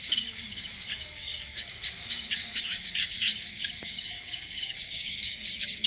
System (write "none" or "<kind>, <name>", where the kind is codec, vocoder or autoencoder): codec, DAC